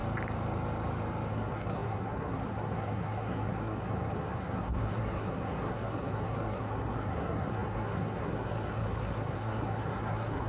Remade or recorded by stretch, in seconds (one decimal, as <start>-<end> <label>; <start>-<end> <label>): 0.0-1.3 recorded; 1.3-10.5 remade